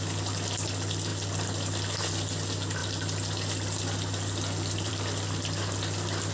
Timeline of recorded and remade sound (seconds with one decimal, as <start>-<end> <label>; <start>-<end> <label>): 0.0-6.3 recorded